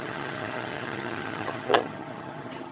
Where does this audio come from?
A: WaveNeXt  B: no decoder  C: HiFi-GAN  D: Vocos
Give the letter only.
C